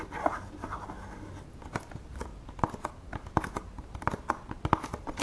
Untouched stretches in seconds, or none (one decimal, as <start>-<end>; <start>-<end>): 0.0-5.2

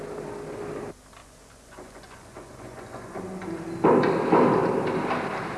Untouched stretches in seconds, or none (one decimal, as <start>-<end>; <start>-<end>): 0.0-1.2; 3.2-5.6

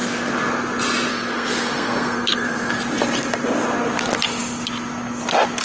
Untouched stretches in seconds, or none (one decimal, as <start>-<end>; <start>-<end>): 0.0-1.1; 2.8-5.6

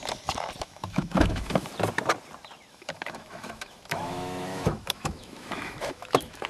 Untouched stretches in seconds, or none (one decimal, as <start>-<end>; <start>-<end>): 0.0-0.6; 1.7-2.7